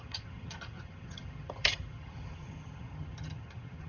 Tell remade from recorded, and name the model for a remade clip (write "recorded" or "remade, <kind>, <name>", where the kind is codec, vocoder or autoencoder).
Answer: remade, vocoder, HiFi-GAN